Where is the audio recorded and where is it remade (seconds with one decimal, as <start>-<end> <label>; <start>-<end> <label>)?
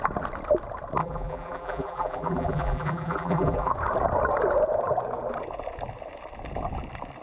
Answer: 0.0-1.0 recorded; 1.0-3.7 remade; 3.7-7.2 recorded